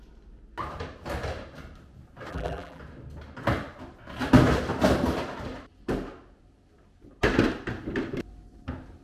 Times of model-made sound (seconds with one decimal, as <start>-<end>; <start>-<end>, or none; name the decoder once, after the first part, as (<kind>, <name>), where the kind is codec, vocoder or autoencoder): 2.3-2.8 (vocoder, BigVGAN v2)